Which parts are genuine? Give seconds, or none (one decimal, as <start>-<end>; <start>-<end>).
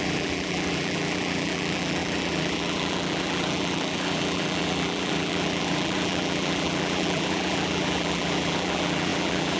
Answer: none